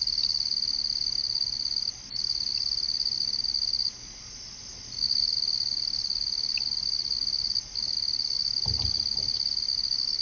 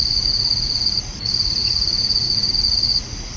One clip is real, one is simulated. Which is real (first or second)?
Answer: first